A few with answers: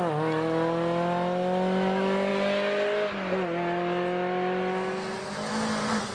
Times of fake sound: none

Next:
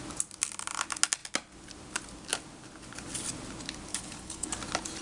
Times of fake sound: 3.9-4.5 (codec, HILCodec)

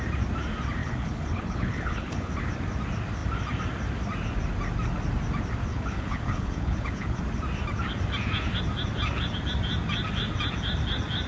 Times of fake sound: 0.8-2.3 (codec, HILCodec); 5.7-7.2

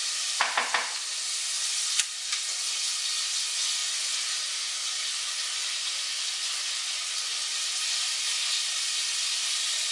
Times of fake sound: none

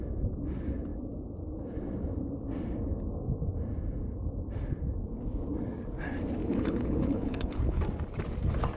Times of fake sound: 6.4-7.8 (codec, HILCodec)

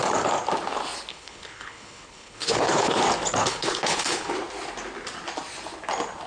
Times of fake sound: 1.1-3.0 (codec, HILCodec); 3.4-4.3

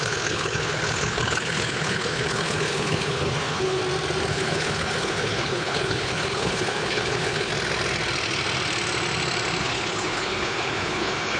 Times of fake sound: 0.0-3.8 (codec, HILCodec); 4.3-7.5; 9.6-11.4